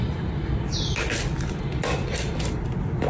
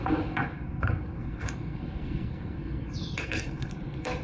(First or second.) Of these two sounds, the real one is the first